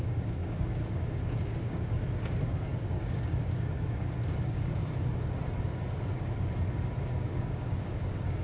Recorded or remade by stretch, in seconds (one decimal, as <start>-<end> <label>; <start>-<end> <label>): 0.0-4.8 remade; 4.8-7.0 recorded; 7.0-8.4 remade